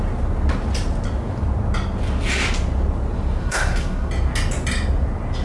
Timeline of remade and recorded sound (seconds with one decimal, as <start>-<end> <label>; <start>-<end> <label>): 0.0-3.4 recorded; 3.4-4.1 remade; 4.1-5.4 recorded